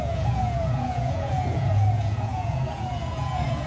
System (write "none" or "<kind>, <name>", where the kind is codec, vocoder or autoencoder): vocoder, Vocos